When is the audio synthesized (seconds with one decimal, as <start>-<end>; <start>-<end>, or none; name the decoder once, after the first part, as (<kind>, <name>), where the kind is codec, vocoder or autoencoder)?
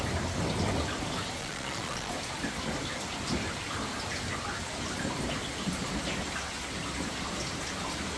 1.4-2.1 (vocoder, Vocos)